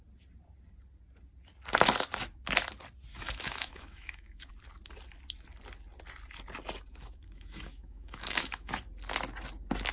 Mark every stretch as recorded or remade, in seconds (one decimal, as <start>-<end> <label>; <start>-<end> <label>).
0.0-3.1 recorded; 3.1-4.5 remade; 4.5-6.9 recorded; 6.9-8.7 remade; 8.7-9.9 recorded